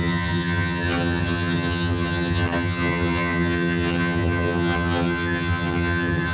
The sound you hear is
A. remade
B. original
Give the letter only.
A